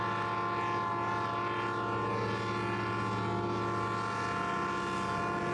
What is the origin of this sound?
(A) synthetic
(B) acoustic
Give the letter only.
B